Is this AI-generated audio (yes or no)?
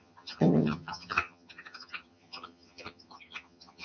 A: yes